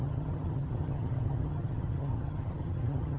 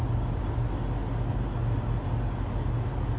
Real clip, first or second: second